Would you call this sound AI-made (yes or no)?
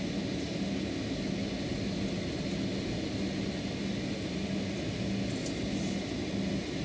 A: no